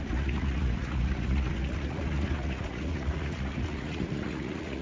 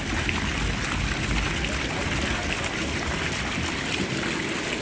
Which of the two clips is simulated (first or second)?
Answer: first